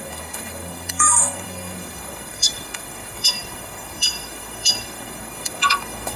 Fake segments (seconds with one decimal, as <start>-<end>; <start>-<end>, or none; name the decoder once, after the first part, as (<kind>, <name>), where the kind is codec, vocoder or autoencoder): 0.0-6.2 (codec, SNAC)